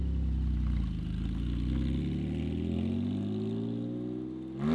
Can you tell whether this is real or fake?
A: real